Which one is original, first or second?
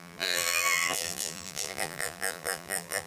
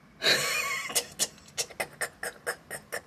second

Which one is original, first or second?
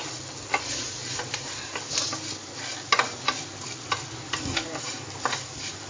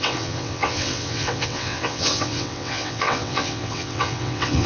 first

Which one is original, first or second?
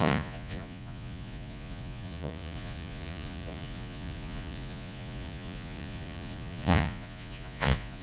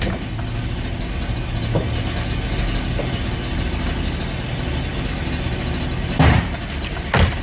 second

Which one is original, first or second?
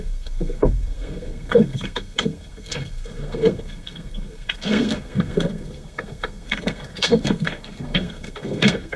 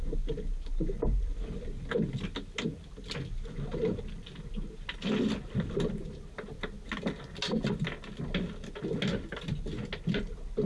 second